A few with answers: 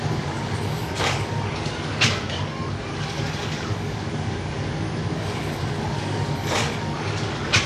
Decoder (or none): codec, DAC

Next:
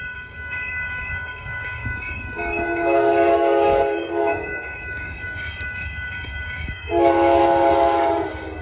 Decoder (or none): codec, DAC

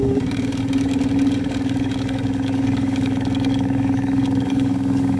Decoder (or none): codec, DAC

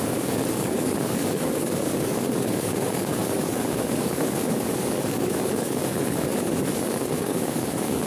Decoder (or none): codec, DAC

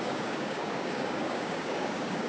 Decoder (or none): codec, DAC